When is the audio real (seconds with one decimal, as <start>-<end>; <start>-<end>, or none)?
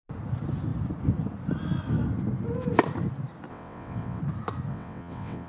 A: 0.0-3.5; 4.2-4.7